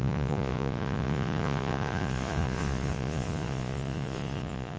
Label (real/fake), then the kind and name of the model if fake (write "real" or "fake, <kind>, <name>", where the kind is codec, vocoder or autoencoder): fake, vocoder, Vocos